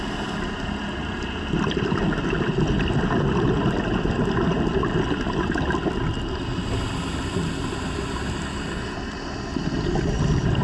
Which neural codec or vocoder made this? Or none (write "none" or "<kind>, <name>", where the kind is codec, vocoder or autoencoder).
none